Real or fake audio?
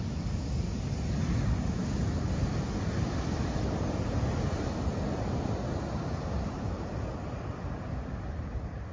real